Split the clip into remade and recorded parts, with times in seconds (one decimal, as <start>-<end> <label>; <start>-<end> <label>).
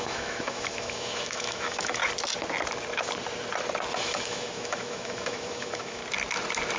0.0-2.0 remade; 2.0-4.0 recorded; 4.0-6.0 remade; 6.0-6.8 recorded